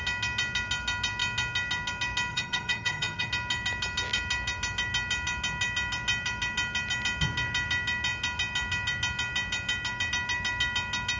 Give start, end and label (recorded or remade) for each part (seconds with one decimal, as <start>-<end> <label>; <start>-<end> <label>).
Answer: 0.0-2.3 recorded; 2.3-3.3 remade; 3.3-11.2 recorded